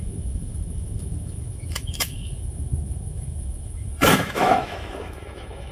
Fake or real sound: fake